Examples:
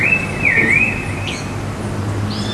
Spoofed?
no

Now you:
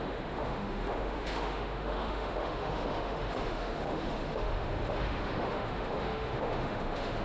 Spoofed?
yes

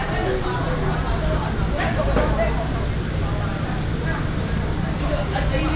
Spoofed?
no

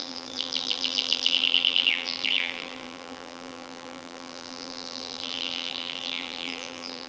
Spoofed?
yes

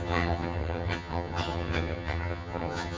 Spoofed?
yes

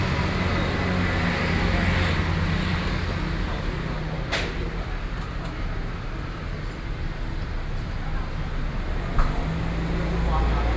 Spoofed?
no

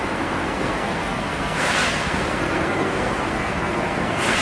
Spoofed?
yes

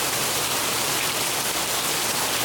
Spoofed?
no